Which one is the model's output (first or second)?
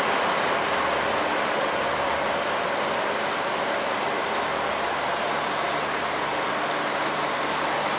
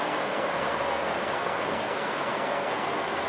second